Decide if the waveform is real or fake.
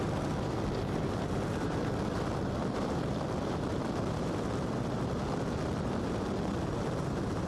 fake